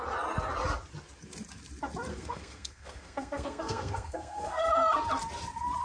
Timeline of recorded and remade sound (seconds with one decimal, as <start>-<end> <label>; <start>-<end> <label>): 0.0-2.1 recorded; 2.1-4.6 remade; 4.6-5.8 recorded